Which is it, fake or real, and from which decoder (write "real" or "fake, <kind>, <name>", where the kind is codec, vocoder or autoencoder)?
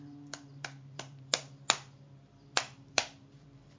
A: fake, vocoder, BigVGAN v2